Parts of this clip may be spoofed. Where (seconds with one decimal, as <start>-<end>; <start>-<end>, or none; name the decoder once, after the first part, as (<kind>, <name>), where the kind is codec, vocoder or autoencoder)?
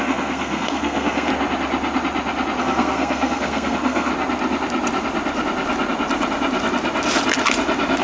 0.0-1.3 (codec, SNAC); 2.6-4.1